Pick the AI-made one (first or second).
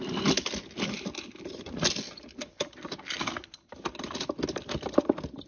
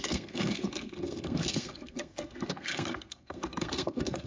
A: second